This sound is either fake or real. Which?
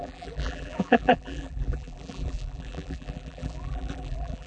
fake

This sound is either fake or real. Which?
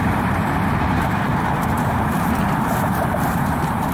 fake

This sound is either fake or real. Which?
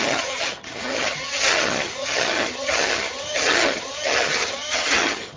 fake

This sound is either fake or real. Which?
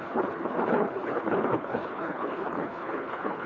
fake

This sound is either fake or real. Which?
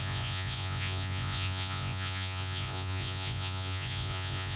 fake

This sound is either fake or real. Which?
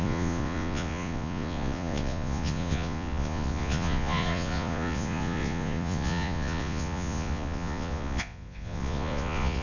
fake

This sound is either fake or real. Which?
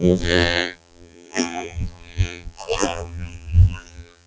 fake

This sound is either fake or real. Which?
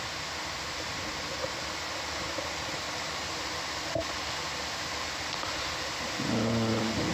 real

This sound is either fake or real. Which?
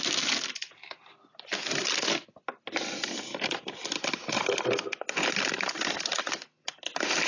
real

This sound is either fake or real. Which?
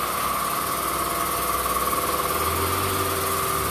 real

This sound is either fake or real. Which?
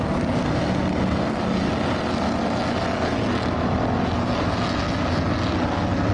real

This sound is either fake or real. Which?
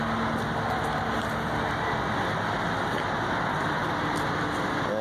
real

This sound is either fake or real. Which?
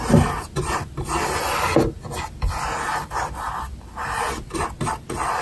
real